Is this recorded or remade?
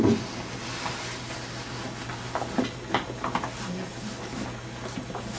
recorded